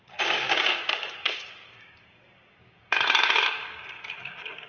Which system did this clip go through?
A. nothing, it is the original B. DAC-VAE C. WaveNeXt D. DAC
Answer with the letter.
D